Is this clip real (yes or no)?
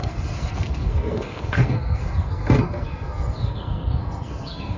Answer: no